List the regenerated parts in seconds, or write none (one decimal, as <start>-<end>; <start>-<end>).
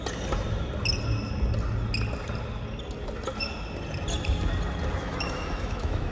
5.0-6.1